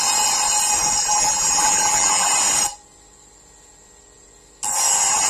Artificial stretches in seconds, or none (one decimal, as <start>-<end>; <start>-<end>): 1.0-2.3